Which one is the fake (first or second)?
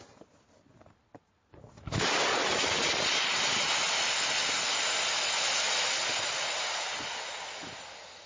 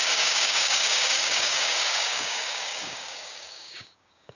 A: second